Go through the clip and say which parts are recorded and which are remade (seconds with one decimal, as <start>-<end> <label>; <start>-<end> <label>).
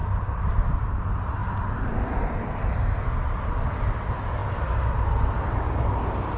0.0-6.4 recorded